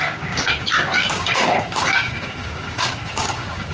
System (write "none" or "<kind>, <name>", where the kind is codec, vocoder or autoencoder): codec, DAC